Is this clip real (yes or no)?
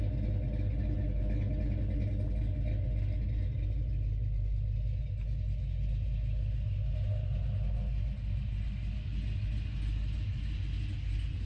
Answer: yes